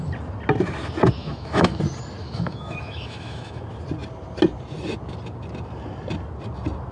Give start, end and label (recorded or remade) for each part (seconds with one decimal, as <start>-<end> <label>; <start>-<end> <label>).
0.0-1.2 recorded; 1.2-1.8 remade; 1.8-2.2 recorded; 2.2-3.6 remade; 3.6-6.9 recorded